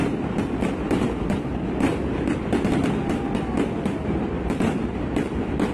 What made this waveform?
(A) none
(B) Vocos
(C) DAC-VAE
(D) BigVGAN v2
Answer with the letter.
A